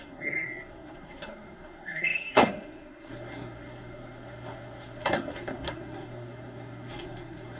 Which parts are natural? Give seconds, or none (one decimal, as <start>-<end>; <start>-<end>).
none